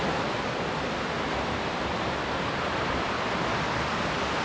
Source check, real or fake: real